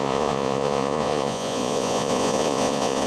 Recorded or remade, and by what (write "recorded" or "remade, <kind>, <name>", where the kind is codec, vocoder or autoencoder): remade, vocoder, Vocos